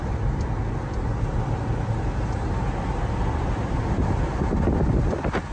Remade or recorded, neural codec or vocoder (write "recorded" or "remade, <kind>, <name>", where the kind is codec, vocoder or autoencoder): recorded